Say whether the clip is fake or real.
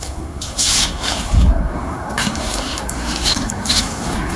fake